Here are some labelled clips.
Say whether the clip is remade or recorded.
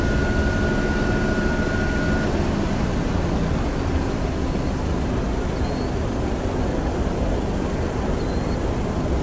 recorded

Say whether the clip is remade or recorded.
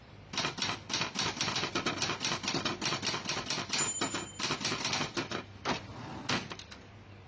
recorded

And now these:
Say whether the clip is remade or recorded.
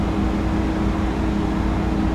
recorded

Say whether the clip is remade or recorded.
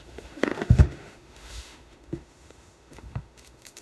remade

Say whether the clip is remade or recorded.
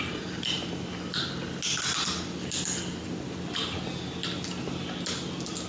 recorded